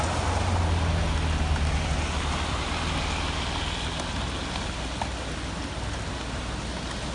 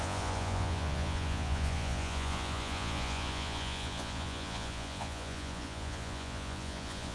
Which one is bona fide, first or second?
first